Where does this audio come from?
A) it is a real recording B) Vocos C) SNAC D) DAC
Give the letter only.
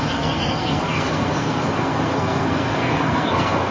C